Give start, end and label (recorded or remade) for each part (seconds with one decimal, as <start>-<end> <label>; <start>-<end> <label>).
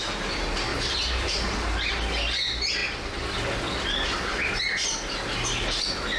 0.0-0.7 recorded; 0.7-1.9 remade; 1.9-6.2 recorded